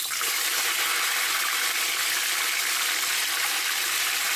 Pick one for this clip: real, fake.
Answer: real